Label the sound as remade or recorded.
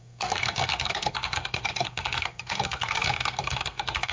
remade